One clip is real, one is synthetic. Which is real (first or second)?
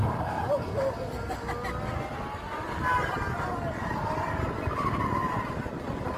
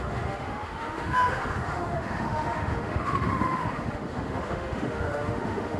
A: first